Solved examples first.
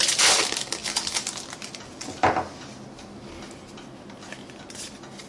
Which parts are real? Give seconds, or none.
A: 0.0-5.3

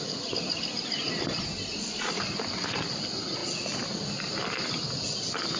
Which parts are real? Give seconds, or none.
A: 0.0-5.6

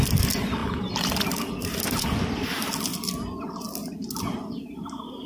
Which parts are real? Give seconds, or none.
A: 0.0-5.3

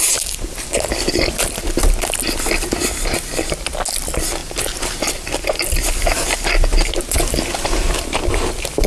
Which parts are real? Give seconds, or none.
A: 0.0-8.9

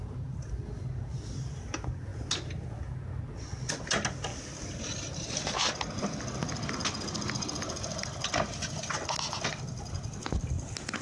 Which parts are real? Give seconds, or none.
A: 0.0-11.0

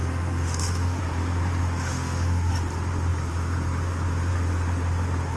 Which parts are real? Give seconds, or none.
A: 1.0-1.6; 2.5-5.4